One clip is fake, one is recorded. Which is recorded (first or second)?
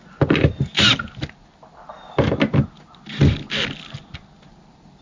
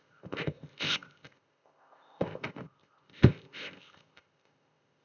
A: first